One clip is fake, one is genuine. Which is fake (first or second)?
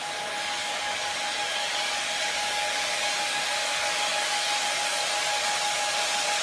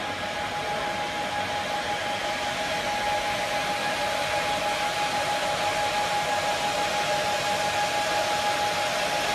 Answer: first